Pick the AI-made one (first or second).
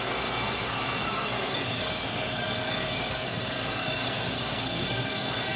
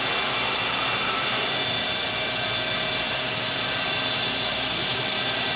first